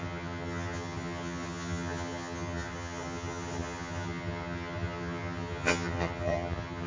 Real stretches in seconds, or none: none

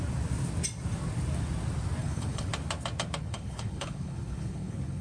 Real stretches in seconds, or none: 0.0-2.0; 2.5-3.2